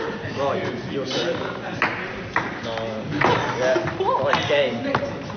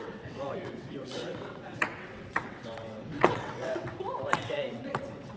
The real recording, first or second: first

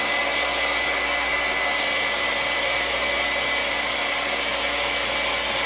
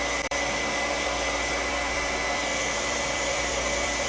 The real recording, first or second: first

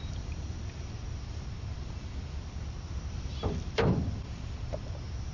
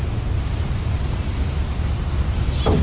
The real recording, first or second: second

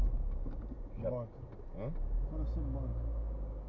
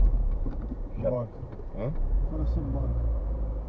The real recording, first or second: first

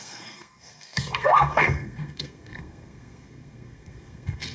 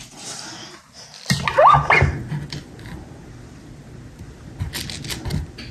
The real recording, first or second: second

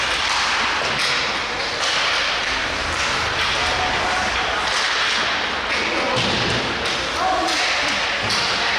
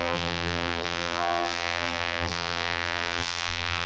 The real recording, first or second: first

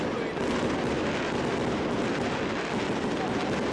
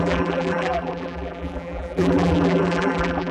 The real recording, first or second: first